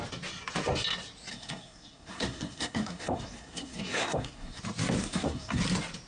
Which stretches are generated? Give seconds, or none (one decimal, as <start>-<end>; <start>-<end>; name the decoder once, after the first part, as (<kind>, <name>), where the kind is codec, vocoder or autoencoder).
1.3-4.6 (codec, SNAC); 5.0-5.6